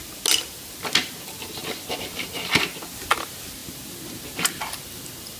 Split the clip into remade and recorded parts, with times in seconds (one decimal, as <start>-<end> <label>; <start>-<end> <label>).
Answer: 0.0-5.4 recorded